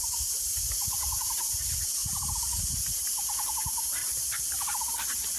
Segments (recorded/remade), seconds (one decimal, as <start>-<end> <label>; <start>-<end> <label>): 0.0-4.0 recorded; 4.0-4.9 remade; 4.9-5.4 recorded